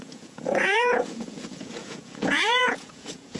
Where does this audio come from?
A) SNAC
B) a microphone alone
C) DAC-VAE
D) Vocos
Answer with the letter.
D